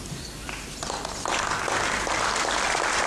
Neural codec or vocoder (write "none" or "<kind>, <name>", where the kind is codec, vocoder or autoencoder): none